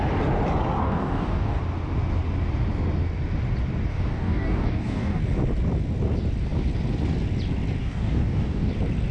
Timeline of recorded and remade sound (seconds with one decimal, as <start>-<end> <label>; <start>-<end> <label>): 0.0-0.8 recorded; 0.8-1.6 remade; 1.6-3.9 recorded; 3.9-5.2 remade; 5.2-7.8 recorded; 7.8-8.7 remade; 8.7-9.1 recorded